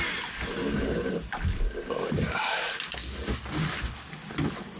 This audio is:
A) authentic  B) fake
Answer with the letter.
A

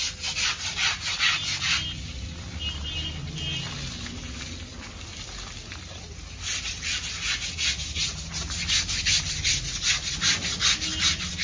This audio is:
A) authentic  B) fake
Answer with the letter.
A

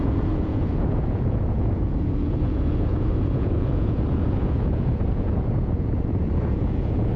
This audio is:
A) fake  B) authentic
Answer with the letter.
A